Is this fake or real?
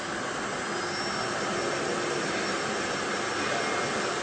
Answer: real